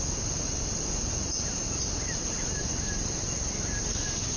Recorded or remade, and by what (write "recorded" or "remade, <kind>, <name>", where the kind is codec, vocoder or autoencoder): recorded